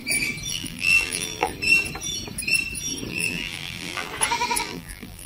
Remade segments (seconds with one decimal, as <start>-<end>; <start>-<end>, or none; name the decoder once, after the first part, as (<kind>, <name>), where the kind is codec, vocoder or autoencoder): 0.5-1.5 (vocoder, BigVGAN v2); 3.1-4.1; 4.6-5.3